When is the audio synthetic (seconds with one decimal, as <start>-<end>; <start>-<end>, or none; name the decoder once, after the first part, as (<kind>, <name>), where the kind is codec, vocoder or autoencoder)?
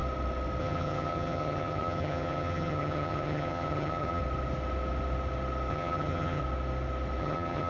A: 0.6-4.2 (vocoder, HiFi-GAN); 5.7-6.4; 7.2-7.7